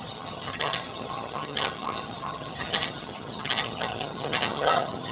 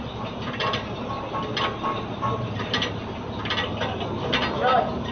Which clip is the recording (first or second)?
second